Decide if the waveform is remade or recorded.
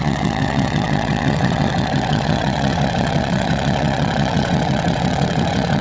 remade